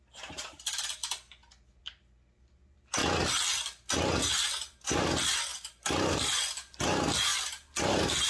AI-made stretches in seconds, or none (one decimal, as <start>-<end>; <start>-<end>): none